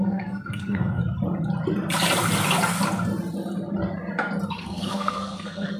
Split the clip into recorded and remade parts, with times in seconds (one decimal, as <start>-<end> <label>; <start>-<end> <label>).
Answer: 0.0-1.0 remade; 1.0-4.5 recorded; 4.5-5.8 remade